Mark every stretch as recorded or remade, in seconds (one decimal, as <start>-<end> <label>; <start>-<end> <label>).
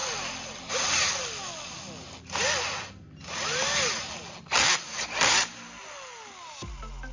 0.0-7.1 recorded